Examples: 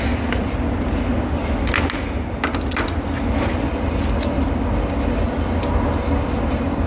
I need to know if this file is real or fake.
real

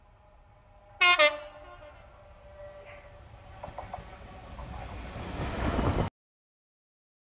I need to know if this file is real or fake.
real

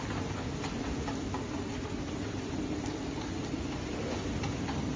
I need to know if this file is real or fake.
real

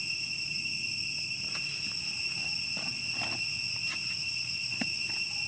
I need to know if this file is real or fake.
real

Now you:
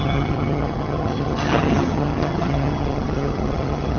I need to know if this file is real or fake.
fake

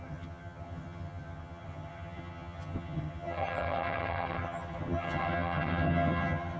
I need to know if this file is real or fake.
fake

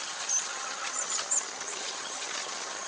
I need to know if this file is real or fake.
fake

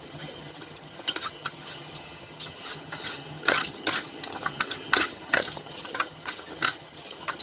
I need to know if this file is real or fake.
fake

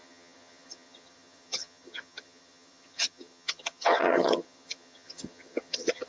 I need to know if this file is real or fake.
fake